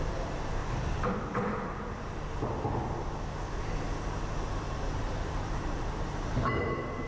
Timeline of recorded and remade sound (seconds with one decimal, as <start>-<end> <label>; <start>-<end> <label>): 0.0-0.6 remade; 0.6-4.5 recorded; 4.5-7.1 remade